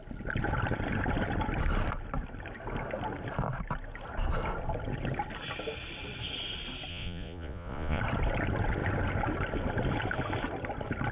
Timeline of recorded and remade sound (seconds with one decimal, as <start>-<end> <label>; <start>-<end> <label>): 0.0-6.9 recorded; 6.9-8.0 remade; 8.0-11.1 recorded